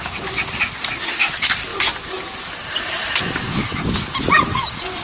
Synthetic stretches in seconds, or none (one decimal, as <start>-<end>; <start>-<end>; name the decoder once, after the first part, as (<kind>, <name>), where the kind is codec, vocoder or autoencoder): none